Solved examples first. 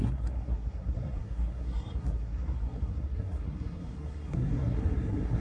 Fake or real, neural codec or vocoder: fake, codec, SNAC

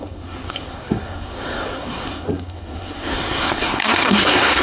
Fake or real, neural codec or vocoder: fake, codec, SNAC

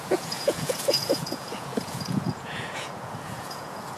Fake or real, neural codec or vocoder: fake, vocoder, Vocos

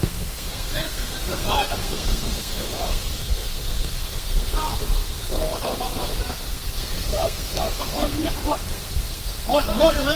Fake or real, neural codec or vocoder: fake, codec, SNAC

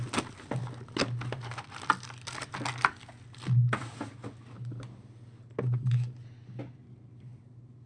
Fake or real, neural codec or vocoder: real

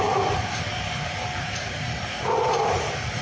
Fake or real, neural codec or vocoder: fake, vocoder, BigVGAN v2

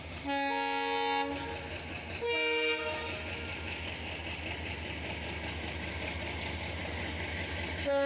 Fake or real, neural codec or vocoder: real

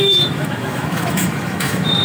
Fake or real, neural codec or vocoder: fake, autoencoder, DAC-VAE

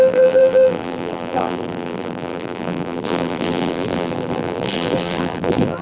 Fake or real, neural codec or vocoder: fake, vocoder, BigVGAN v2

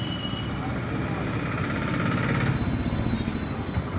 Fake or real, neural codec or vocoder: real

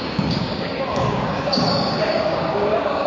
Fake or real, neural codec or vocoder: fake, codec, DAC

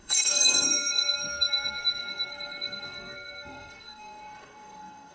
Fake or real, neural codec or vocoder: fake, codec, SNAC